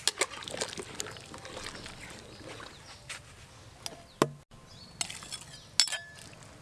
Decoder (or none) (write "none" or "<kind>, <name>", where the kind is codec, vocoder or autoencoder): none